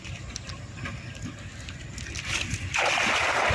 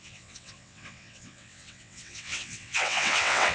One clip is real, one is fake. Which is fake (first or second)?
second